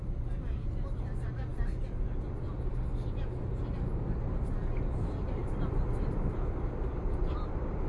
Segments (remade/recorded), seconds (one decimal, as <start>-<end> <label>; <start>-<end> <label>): 0.0-7.9 recorded